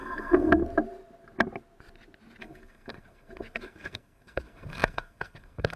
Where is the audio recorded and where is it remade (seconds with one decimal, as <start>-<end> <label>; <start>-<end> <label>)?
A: 0.0-0.6 remade; 0.6-2.4 recorded; 2.4-5.8 remade